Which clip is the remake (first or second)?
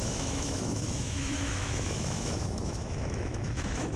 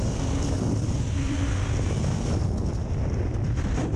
first